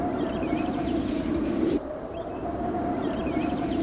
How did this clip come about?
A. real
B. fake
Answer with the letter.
B